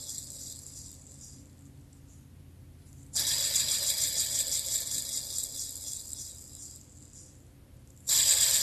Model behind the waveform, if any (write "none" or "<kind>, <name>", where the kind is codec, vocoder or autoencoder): none